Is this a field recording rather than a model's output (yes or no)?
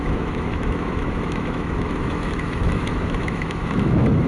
no